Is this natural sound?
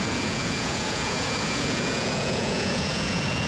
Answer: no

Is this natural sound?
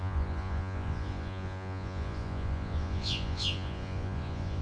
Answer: no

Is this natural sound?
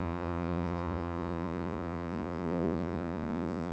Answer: no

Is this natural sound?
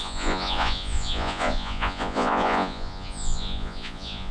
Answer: no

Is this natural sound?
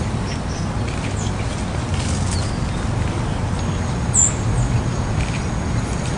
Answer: yes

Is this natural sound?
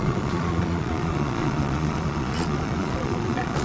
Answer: no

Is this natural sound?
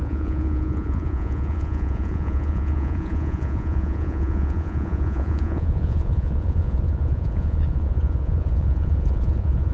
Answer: no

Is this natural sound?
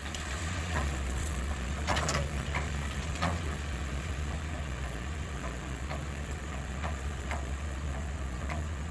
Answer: no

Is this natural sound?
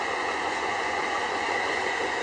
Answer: no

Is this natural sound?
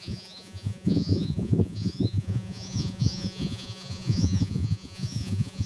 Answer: no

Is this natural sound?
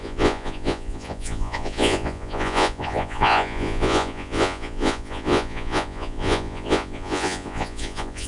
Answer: no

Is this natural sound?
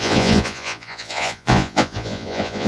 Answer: no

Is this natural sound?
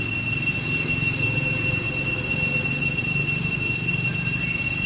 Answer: yes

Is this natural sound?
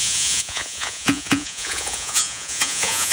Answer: no